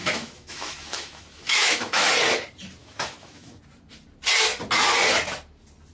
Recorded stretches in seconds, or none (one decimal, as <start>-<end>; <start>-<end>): 2.1-2.8; 3.6-5.9